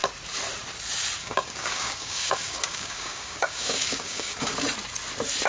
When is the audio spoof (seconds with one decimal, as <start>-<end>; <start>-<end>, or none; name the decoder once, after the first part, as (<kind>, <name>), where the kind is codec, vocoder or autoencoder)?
1.2-4.5 (codec, DAC)